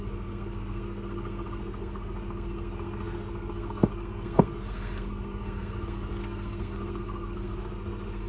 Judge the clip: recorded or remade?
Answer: remade